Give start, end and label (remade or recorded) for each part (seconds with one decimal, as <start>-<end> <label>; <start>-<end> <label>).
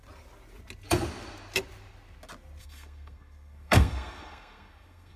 0.0-2.6 recorded; 2.6-5.2 remade